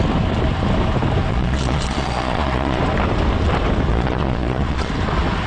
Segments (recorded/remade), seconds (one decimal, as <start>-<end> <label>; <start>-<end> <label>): 0.0-1.3 recorded; 1.3-2.8 remade; 2.8-3.9 recorded; 3.9-4.9 remade; 4.9-5.5 recorded